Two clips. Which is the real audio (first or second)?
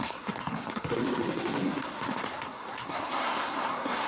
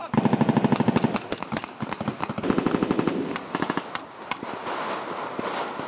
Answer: second